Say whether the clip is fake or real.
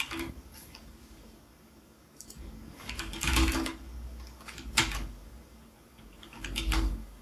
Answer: fake